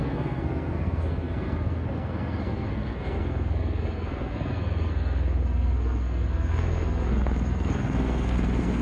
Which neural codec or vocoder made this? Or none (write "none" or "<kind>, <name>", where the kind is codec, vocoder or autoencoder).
codec, SNAC